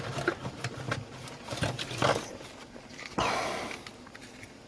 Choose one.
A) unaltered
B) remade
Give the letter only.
A